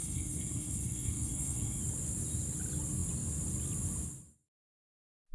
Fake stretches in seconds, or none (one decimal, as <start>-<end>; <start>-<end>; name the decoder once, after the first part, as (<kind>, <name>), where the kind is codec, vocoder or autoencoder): 0.0-1.8 (codec, SNAC)